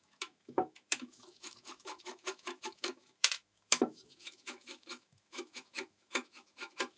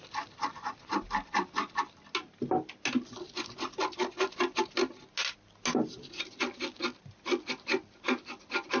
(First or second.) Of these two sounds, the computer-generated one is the first